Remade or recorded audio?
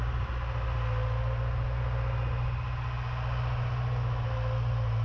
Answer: recorded